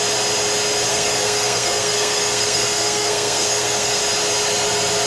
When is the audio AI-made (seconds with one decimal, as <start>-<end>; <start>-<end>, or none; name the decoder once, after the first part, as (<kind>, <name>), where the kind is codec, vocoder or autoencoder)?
0.9-4.0 (codec, SNAC)